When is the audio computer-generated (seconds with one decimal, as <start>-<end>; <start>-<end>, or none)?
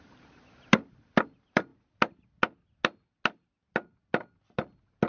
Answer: none